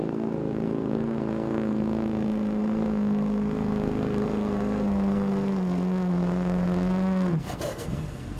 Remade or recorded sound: remade